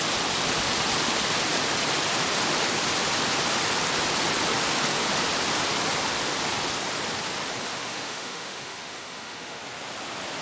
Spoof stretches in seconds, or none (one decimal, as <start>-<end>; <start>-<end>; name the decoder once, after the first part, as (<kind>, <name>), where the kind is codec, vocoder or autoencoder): 7.7-9.6 (autoencoder, DAC-VAE)